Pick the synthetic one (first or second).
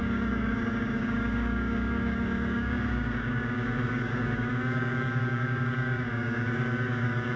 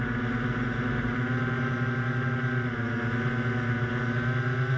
first